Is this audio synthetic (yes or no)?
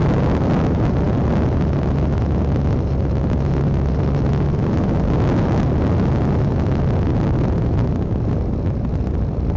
no